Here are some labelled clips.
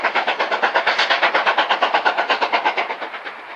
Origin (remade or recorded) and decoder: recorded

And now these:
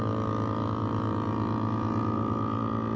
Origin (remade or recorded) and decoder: recorded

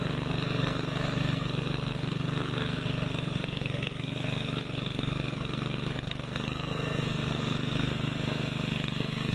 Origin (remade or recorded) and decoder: remade, codec, SNAC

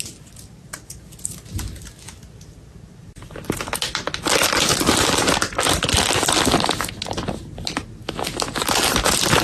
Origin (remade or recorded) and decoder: recorded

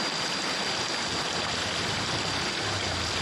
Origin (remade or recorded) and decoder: recorded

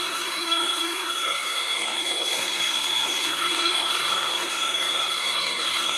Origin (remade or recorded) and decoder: remade, codec, SNAC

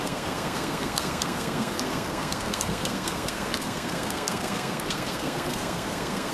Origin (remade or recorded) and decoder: remade, codec, SNAC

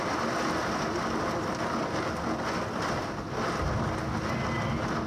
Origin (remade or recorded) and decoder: recorded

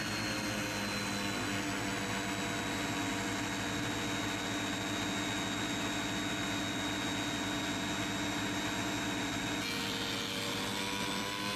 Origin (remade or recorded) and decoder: recorded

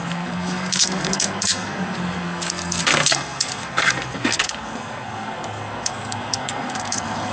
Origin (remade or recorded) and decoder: remade, codec, SNAC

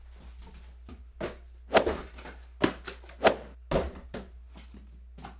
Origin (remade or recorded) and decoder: recorded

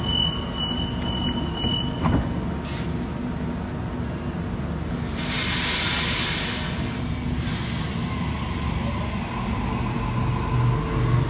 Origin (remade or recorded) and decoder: recorded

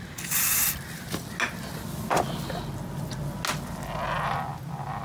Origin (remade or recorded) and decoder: recorded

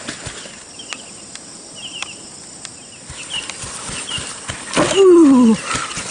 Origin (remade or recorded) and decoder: recorded